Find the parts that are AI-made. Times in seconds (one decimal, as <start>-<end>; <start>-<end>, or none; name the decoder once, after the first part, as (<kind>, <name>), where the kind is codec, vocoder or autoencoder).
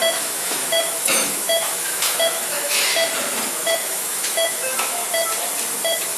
0.0-2.9 (autoencoder, DAC-VAE); 3.5-5.0; 5.7-6.2